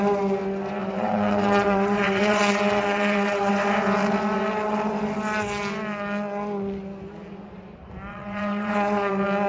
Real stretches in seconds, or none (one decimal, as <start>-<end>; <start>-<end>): 0.0-0.8; 3.5-8.1; 9.1-9.5